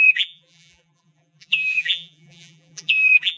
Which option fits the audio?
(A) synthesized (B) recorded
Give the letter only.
A